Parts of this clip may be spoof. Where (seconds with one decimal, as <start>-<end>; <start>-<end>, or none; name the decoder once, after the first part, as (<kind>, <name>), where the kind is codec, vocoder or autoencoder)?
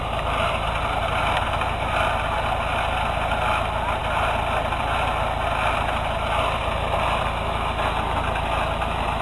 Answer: none